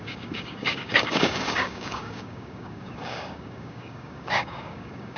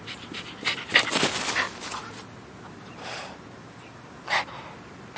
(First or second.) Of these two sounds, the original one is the second